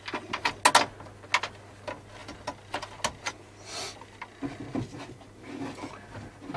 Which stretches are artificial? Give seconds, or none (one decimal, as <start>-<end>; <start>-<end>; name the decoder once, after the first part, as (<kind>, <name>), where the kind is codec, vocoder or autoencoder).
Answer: none